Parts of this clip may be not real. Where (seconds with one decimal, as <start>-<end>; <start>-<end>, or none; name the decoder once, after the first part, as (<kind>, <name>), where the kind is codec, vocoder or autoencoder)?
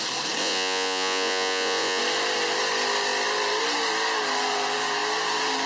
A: 0.4-2.0 (vocoder, Vocos)